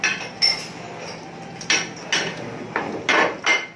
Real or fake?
real